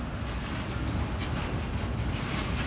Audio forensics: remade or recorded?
recorded